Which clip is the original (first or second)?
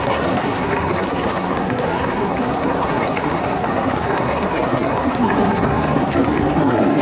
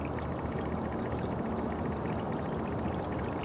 second